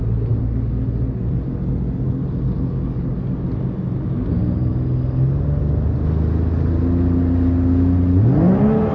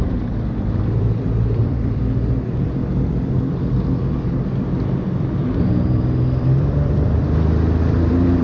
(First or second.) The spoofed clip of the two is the second